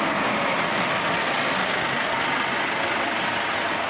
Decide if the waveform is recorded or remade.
recorded